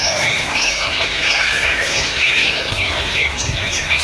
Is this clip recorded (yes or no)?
no